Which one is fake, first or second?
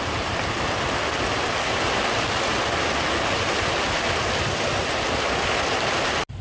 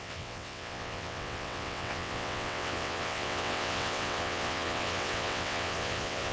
second